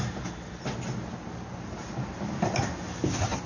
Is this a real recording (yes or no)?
yes